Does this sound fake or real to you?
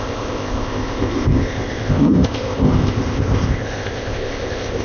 fake